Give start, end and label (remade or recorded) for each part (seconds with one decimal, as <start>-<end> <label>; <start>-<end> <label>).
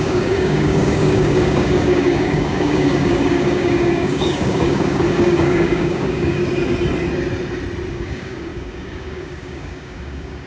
0.0-6.4 remade; 6.4-7.9 recorded; 7.9-10.5 remade